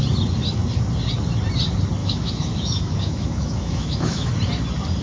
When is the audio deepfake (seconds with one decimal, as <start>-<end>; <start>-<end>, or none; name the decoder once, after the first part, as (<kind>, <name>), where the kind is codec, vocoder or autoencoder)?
2.0-4.3 (autoencoder, DAC-VAE)